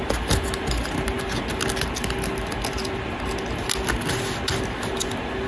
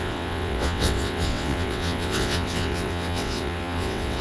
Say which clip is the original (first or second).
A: first